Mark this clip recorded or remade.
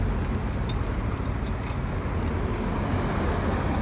recorded